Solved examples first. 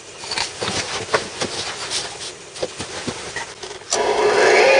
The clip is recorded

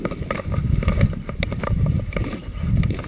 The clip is remade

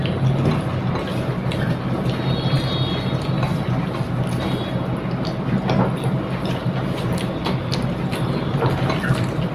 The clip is recorded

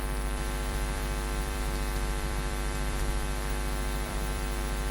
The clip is remade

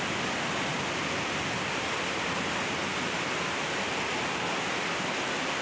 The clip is recorded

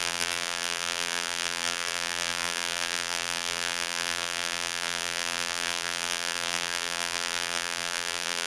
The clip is remade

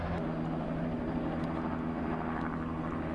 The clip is recorded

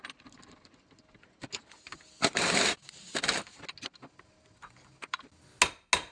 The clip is recorded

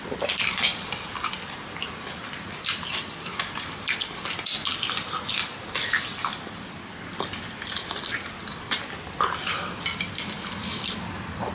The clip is recorded